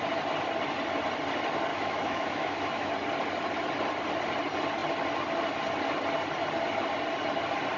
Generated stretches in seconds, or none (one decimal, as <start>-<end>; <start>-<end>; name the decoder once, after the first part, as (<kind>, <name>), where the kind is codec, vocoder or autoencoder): 1.7-2.9 (autoencoder, DAC-VAE)